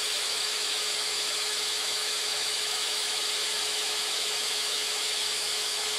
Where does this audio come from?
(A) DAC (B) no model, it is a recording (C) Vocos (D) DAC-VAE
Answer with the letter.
D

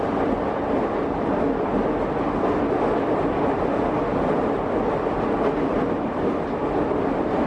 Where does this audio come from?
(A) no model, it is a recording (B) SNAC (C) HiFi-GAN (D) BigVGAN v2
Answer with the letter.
A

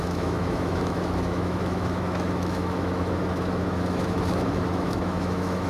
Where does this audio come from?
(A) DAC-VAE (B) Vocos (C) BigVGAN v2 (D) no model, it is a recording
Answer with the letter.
A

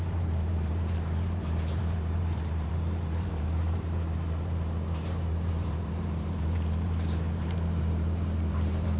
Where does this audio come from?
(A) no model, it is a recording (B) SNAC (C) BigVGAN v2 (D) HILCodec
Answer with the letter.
C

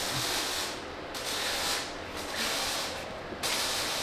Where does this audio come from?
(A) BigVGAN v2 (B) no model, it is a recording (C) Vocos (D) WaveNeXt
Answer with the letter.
B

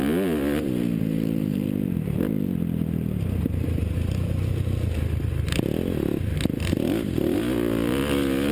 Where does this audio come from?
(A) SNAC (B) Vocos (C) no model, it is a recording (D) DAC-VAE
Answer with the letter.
C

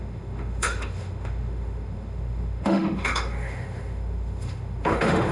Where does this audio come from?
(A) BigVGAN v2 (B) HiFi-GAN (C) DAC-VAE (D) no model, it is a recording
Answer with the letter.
C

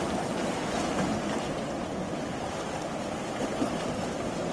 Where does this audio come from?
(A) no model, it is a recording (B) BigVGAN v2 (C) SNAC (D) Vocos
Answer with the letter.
A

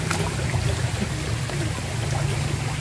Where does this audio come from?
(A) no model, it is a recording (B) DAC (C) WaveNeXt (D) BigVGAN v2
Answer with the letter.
A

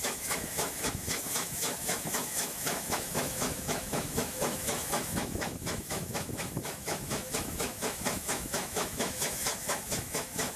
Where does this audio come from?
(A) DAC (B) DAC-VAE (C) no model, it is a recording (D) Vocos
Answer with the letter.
B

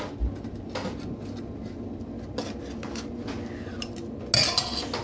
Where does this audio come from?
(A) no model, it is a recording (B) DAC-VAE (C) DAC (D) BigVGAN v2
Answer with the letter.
A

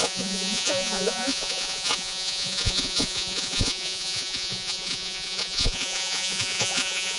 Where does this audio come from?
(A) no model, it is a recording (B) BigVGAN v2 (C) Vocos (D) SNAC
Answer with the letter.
C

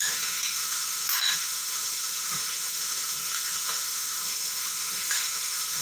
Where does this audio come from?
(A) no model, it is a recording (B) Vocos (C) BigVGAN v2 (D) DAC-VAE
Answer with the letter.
D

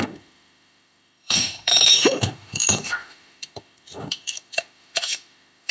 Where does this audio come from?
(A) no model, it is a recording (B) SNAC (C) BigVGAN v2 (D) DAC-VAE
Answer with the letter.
D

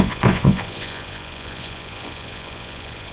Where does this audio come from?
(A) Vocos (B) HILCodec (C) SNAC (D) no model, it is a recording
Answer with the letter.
A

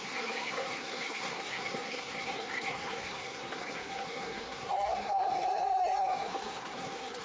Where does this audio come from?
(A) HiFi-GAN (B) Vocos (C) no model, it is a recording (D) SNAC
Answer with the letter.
D